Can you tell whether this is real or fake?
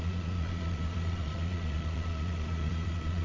fake